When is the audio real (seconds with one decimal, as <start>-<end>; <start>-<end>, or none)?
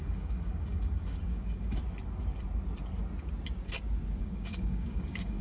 1.8-4.2